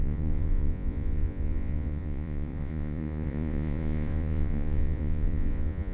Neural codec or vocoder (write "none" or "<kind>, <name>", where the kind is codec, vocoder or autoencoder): vocoder, Vocos